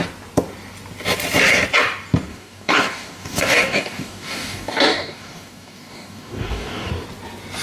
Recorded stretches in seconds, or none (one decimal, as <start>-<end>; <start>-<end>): 0.0-2.3; 6.9-7.6